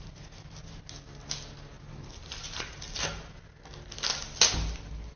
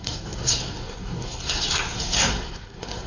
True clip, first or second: first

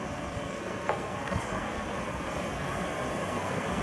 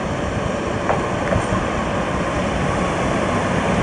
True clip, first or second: second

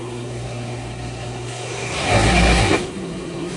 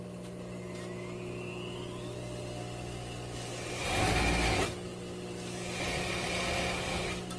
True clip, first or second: second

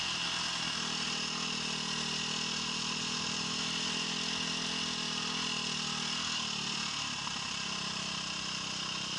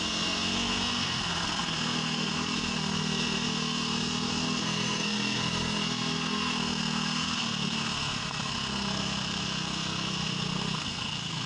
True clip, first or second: first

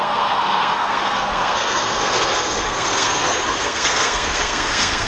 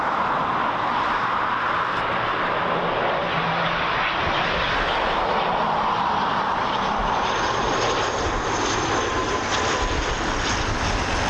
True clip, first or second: second